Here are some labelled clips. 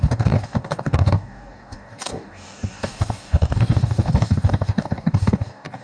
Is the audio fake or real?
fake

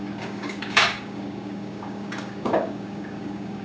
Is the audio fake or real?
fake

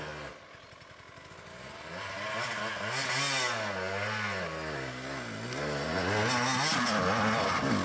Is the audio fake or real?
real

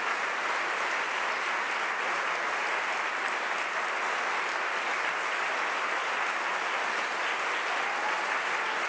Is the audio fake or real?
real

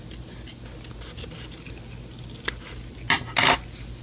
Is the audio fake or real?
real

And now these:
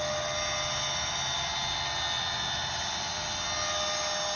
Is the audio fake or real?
real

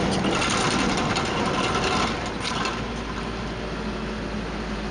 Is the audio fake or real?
real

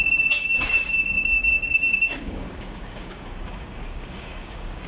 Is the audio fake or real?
fake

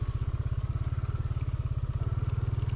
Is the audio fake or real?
real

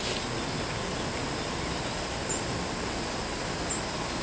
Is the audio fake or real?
real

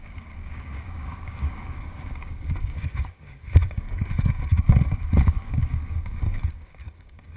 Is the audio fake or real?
fake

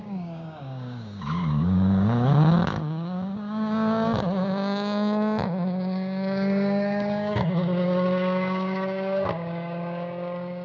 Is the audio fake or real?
fake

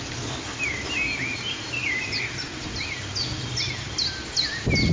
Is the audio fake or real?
real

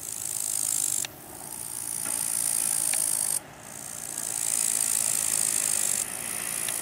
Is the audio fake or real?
real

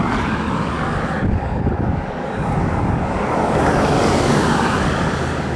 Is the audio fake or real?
fake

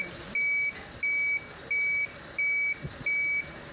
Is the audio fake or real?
real